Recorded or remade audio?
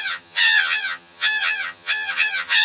remade